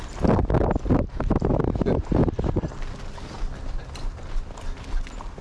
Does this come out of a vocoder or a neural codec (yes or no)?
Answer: no